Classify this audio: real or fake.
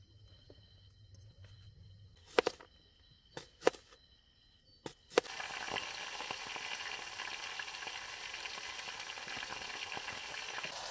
real